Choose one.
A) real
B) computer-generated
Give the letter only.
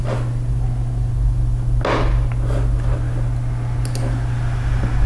A